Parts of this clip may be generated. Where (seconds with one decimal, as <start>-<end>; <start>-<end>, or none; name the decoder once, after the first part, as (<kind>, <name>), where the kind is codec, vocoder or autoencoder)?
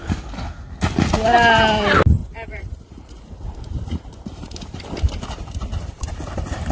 2.2-6.1 (vocoder, BigVGAN v2)